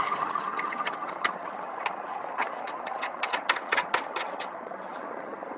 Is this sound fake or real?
fake